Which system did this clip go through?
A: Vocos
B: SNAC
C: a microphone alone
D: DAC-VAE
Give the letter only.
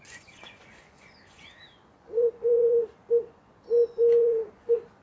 A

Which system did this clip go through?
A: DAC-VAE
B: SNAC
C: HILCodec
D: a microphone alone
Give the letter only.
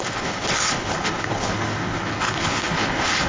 C